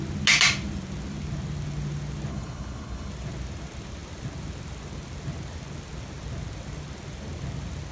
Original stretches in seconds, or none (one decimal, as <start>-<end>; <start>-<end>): 0.0-2.3; 3.1-7.9